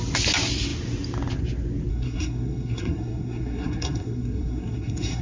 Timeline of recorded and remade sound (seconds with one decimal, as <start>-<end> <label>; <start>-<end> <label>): 0.0-1.9 recorded; 1.9-5.2 remade